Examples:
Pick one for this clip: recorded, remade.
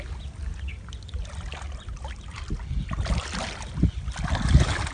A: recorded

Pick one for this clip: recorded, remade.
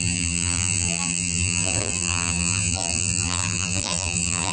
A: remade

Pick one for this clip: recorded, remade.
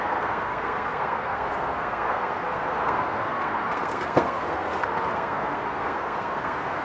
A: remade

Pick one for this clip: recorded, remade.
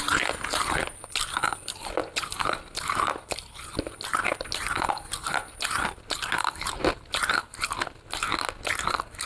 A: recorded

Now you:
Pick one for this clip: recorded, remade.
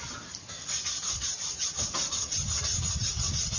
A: recorded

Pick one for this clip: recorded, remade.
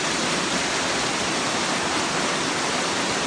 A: recorded